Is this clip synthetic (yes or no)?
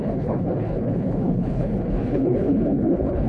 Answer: yes